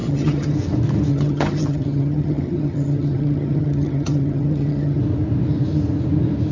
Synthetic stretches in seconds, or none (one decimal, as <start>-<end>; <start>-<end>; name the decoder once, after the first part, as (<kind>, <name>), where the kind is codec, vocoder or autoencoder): 0.0-0.5 (vocoder, HiFi-GAN); 1.1-5.0

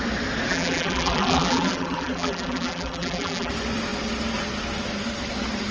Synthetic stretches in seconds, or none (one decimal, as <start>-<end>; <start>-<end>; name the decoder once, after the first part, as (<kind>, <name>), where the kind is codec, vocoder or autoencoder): 0.5-3.5 (vocoder, BigVGAN v2)

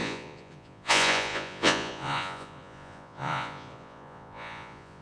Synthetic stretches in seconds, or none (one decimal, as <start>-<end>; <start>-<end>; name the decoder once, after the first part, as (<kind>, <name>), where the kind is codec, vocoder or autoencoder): 0.0-5.0 (vocoder, Vocos)

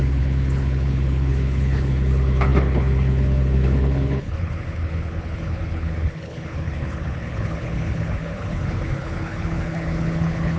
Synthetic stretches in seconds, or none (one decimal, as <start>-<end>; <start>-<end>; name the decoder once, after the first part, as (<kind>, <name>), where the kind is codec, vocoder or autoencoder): 0.0-10.6 (codec, HILCodec)

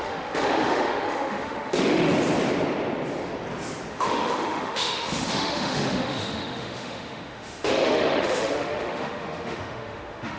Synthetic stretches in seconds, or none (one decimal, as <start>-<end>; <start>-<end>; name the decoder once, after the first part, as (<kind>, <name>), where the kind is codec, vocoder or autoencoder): 0.0-2.1 (autoencoder, DAC-VAE); 3.9-10.4

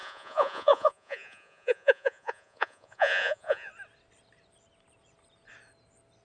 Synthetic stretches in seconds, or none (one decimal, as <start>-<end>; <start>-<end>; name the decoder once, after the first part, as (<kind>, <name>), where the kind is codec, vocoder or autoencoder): 0.0-3.7 (vocoder, Vocos)